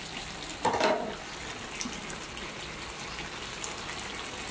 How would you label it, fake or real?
real